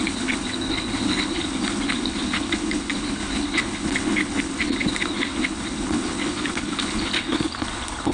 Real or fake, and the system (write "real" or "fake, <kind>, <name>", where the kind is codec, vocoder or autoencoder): fake, codec, HILCodec